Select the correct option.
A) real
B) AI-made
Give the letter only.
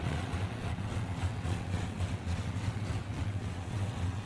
B